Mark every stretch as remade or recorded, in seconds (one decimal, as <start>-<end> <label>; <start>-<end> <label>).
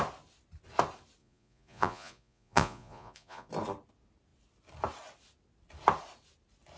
0.0-1.2 recorded; 1.2-3.5 remade; 3.5-6.8 recorded